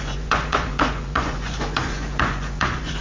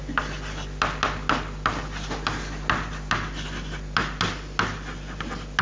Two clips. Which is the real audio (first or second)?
second